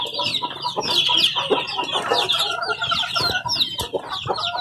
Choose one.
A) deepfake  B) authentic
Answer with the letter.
B